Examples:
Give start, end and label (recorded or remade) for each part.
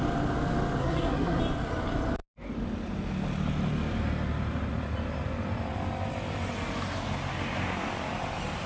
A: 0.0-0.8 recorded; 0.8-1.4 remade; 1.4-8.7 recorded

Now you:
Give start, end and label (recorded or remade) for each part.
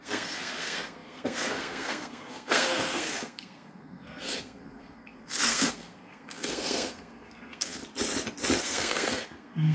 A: 0.0-7.8 remade; 7.8-8.6 recorded; 8.6-9.7 remade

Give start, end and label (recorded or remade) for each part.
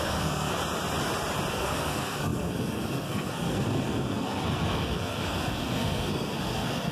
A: 0.0-0.6 remade; 0.6-1.5 recorded; 1.5-6.9 remade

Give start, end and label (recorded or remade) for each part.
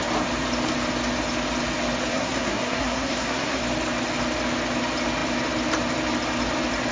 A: 0.0-2.1 recorded; 2.1-3.6 remade; 3.6-6.9 recorded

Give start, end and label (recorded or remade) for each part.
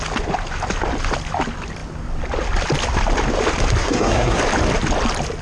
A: 0.0-3.8 recorded; 3.8-4.4 remade; 4.4-5.4 recorded